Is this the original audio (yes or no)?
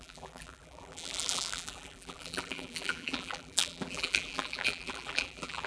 no